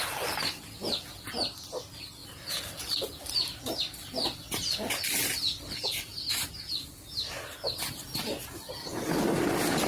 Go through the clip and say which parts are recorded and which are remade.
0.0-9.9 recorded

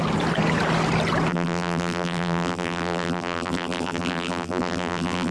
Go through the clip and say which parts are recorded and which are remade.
0.0-1.3 recorded; 1.3-5.3 remade